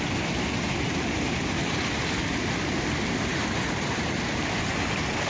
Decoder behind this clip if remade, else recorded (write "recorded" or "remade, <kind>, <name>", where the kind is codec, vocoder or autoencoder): recorded